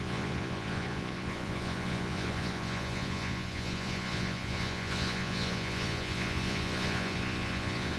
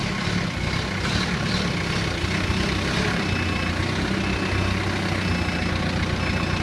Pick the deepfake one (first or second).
first